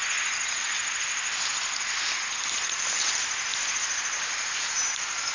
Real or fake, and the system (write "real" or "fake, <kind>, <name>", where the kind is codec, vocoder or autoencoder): real